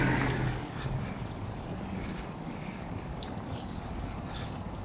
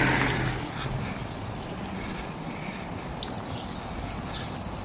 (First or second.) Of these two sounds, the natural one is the second